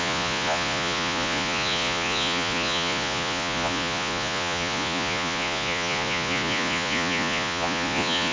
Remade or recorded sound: remade